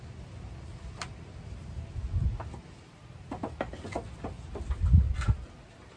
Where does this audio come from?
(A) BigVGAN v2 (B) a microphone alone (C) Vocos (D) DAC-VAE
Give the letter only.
B